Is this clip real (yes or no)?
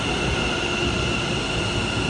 yes